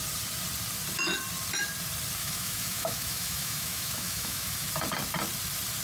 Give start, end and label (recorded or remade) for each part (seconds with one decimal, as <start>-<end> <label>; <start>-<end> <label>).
0.0-2.2 recorded; 2.2-4.7 remade; 4.7-5.8 recorded